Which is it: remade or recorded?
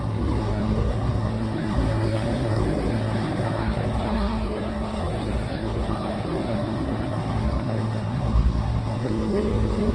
remade